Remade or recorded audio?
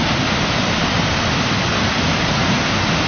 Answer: recorded